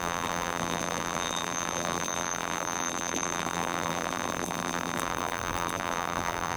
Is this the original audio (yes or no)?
no